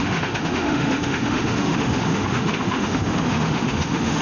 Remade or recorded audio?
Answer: remade